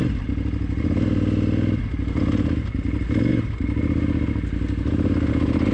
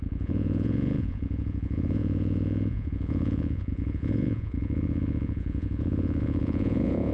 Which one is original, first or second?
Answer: first